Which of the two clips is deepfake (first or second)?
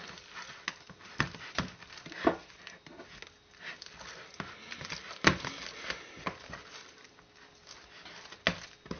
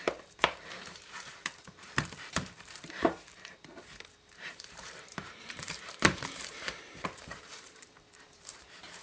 second